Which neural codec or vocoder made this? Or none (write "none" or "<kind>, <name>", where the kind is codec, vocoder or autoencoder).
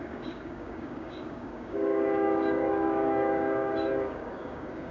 codec, DAC